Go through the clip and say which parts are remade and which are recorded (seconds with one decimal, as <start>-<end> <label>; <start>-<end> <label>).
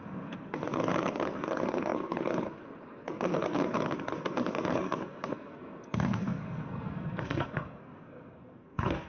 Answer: 0.0-9.1 remade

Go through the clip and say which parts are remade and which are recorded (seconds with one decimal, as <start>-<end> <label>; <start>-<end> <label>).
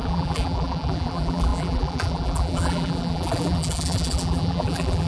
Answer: 0.0-5.1 remade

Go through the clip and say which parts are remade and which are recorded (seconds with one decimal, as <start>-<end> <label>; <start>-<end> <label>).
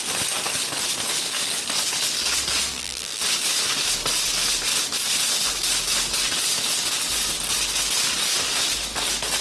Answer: 0.0-2.7 recorded; 2.7-3.2 remade; 3.2-9.4 recorded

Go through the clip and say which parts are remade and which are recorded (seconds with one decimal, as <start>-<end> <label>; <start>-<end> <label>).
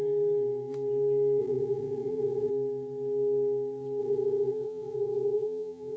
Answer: 0.0-1.4 recorded; 1.4-2.5 remade; 2.5-4.0 recorded; 4.0-6.0 remade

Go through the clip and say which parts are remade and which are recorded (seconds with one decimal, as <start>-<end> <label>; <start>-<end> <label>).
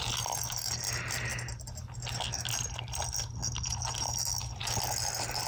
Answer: 0.0-5.5 recorded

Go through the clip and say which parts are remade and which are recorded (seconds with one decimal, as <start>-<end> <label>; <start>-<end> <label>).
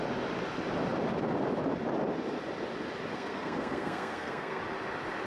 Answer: 0.0-3.1 recorded; 3.1-4.6 remade; 4.6-5.3 recorded